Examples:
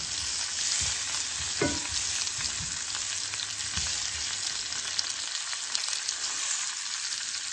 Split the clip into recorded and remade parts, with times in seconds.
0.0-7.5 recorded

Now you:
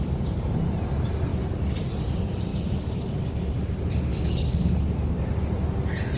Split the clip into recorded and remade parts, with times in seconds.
0.0-1.3 recorded; 1.3-2.0 remade; 2.0-4.1 recorded; 4.1-4.7 remade; 4.7-6.2 recorded

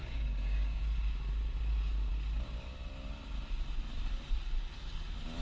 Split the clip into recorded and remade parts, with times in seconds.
0.0-0.8 remade; 0.8-5.4 recorded

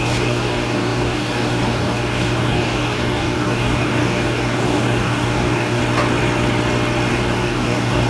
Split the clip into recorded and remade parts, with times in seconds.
0.0-5.8 remade; 5.8-7.1 recorded; 7.1-8.1 remade

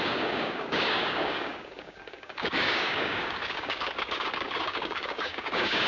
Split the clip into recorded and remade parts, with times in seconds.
0.0-5.9 remade

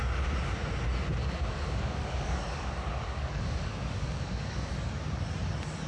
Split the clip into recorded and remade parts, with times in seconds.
0.0-1.2 recorded; 1.2-4.7 remade; 4.7-5.9 recorded